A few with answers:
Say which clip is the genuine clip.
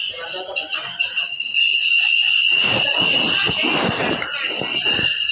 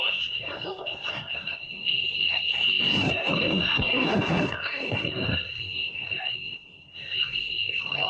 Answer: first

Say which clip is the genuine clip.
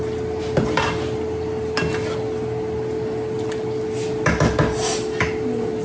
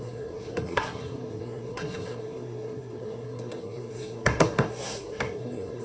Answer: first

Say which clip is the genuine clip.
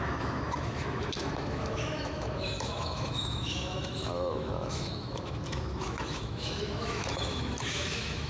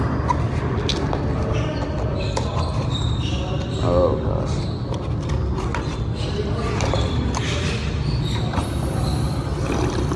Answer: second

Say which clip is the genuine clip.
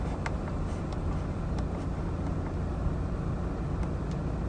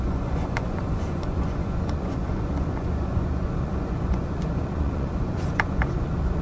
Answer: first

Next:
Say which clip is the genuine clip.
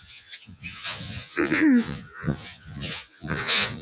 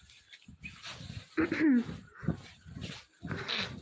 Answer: second